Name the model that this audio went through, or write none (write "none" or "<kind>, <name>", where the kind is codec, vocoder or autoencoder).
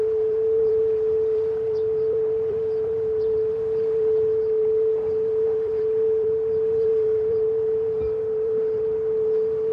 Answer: vocoder, BigVGAN v2